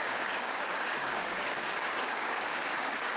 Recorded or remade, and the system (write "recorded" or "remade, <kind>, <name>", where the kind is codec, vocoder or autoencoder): remade, codec, DAC